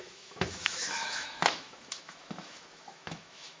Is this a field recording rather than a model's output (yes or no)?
no